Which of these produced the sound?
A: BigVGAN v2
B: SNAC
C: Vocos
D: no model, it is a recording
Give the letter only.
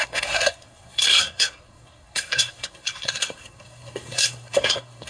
B